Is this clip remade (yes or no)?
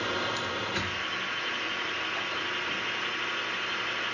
no